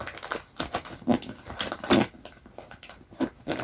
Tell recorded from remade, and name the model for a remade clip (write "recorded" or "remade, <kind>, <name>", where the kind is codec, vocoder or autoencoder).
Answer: recorded